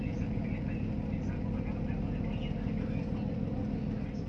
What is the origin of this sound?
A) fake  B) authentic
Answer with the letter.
B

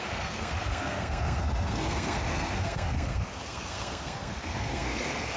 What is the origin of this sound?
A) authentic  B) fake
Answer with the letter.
B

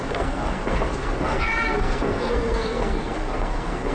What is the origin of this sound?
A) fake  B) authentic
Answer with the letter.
A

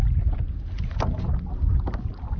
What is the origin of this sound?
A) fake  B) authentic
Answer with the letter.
B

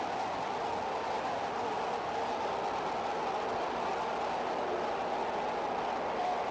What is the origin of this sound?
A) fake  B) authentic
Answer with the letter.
B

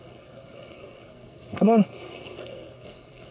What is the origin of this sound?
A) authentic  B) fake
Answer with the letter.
B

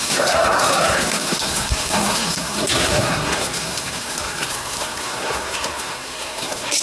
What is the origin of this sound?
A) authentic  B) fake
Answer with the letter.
B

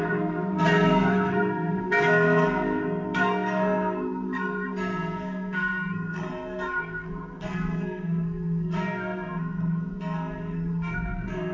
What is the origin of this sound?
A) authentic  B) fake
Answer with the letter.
B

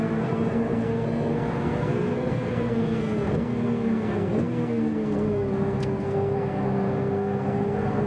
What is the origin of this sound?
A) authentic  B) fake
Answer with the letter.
B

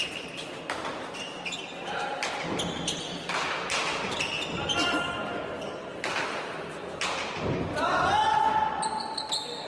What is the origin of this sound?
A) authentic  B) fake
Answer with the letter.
A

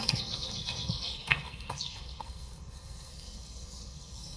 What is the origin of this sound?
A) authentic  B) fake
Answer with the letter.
B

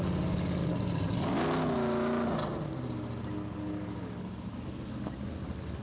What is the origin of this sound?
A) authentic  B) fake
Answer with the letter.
A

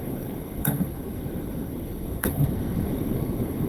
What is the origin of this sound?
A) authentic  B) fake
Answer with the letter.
B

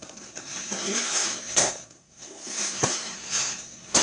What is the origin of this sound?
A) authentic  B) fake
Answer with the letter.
B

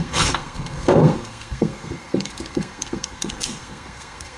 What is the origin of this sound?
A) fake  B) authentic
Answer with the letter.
A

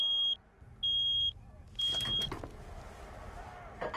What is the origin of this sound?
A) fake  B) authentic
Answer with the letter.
B